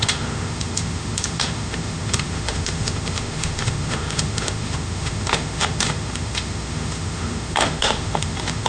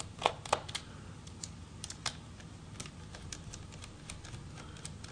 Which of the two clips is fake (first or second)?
first